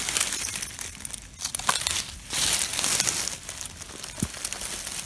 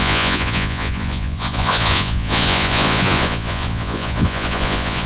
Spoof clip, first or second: second